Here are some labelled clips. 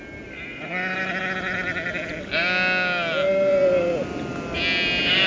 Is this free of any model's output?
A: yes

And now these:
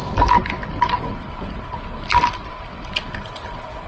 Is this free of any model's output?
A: yes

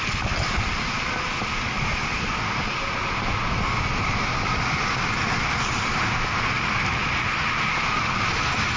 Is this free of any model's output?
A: yes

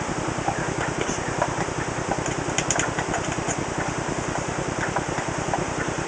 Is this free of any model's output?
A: yes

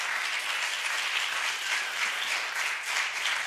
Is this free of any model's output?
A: yes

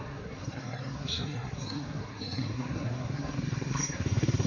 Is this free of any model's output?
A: no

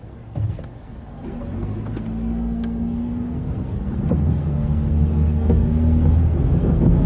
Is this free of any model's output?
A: no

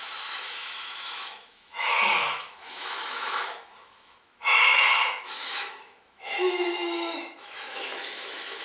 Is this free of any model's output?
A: no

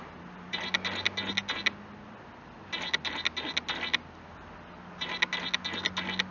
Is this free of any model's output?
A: yes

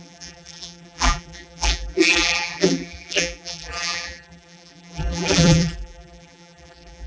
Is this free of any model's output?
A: no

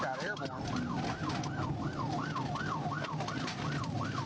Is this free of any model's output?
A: yes